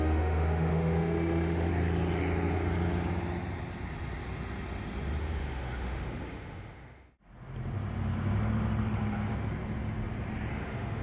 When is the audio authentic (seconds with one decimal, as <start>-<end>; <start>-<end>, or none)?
1.7-5.2; 7.1-10.5